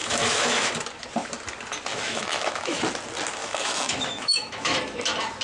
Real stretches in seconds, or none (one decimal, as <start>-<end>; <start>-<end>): 0.7-1.9; 2.8-3.4; 4.8-5.4